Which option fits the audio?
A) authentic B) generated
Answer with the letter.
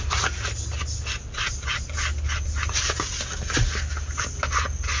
A